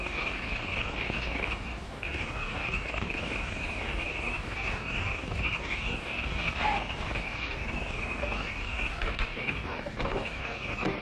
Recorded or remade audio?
remade